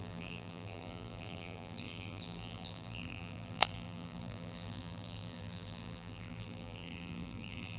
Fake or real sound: fake